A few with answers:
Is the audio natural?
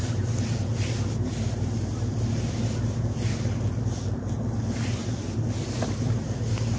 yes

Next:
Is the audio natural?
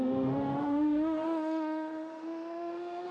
no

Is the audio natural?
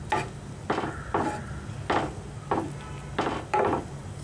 yes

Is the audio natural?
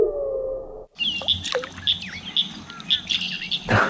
yes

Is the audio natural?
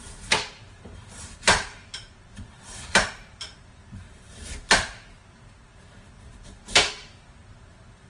no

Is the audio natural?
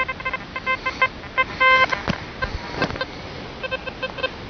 yes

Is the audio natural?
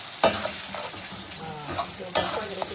yes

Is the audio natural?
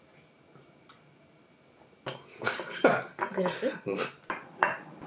no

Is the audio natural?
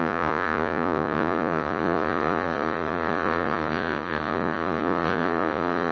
no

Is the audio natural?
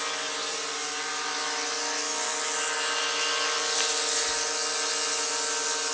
yes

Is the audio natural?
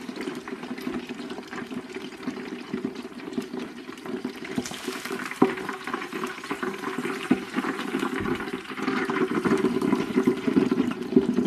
no